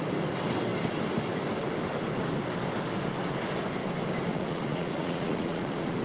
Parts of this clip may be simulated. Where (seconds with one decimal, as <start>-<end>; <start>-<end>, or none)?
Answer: 4.3-6.0